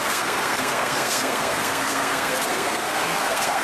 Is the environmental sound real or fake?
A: fake